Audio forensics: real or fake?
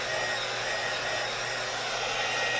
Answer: real